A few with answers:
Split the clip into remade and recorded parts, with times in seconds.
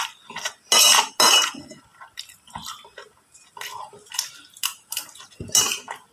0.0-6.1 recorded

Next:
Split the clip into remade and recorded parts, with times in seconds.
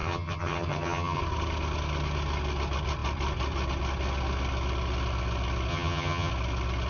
0.0-1.2 remade; 1.2-5.7 recorded; 5.7-6.3 remade; 6.3-6.9 recorded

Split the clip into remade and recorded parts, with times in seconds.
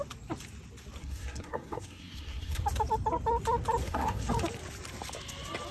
0.0-1.0 recorded; 1.0-2.6 remade; 2.6-3.8 recorded; 3.8-4.3 remade; 4.3-5.7 recorded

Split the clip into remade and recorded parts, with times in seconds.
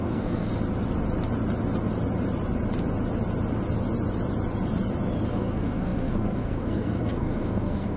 0.0-0.5 remade; 0.5-5.3 recorded; 5.3-8.0 remade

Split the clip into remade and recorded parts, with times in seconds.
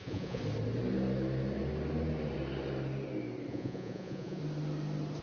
0.0-0.4 remade; 0.4-3.5 recorded; 3.5-4.4 remade; 4.4-5.2 recorded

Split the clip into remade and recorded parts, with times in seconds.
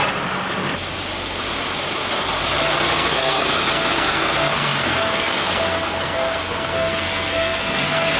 0.0-2.7 recorded; 2.7-8.2 remade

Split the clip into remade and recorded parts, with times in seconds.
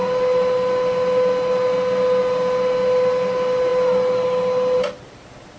0.0-5.6 recorded